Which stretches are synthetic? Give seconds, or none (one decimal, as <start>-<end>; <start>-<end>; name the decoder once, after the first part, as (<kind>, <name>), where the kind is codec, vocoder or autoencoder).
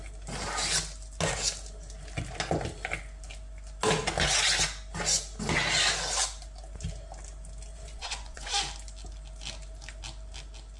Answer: 7.7-8.5 (vocoder, Vocos)